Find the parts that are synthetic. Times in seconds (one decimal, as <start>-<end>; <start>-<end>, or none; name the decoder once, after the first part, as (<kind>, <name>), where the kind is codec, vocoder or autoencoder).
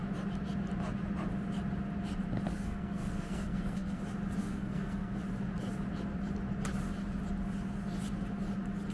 2.5-4.0 (codec, SNAC); 4.4-5.2